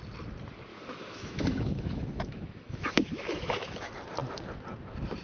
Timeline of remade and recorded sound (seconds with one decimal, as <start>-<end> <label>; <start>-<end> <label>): 0.0-0.7 recorded; 0.7-3.8 remade; 3.8-5.2 recorded